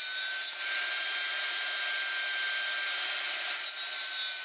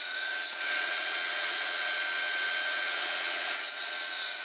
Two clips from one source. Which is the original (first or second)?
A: first